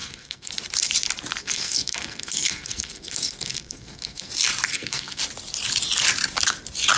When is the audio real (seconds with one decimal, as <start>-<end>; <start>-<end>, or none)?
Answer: 0.5-1.4; 4.3-4.7; 5.2-7.0